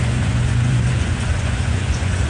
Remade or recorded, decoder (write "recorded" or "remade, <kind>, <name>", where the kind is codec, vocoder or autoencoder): remade, vocoder, Vocos